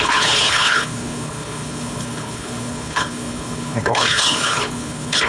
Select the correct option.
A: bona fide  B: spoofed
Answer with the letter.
B